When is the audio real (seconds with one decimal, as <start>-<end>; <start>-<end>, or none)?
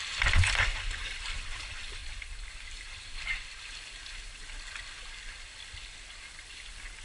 0.0-2.0; 3.6-7.0